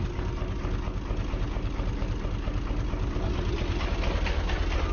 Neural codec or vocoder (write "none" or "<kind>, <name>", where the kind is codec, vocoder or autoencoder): none